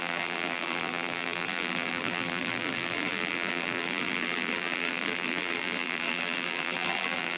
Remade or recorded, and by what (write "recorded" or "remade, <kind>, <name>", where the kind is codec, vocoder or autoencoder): remade, vocoder, BigVGAN v2